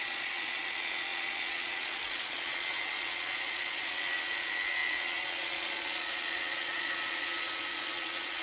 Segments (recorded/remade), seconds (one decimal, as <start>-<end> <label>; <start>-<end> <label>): 0.0-8.4 remade